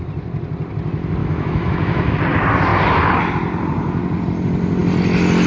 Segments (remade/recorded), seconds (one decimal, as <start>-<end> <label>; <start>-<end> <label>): 0.0-1.2 recorded; 1.2-2.2 remade; 2.2-5.5 recorded